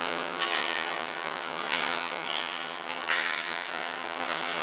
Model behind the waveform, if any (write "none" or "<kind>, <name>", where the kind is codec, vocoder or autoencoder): vocoder, HiFi-GAN